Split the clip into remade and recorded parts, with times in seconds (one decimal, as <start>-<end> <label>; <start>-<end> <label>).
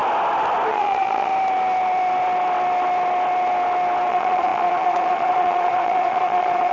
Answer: 0.0-0.7 recorded; 0.7-1.3 remade; 1.3-4.1 recorded; 4.1-6.7 remade